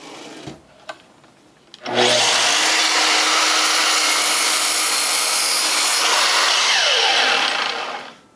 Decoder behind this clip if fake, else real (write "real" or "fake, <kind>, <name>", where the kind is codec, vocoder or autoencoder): real